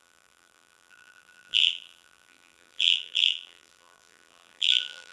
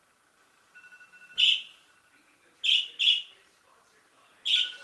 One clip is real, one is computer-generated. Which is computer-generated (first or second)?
first